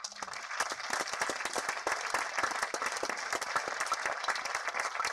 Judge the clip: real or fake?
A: real